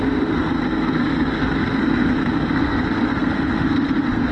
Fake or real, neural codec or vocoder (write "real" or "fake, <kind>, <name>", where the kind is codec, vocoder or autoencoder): fake, codec, SNAC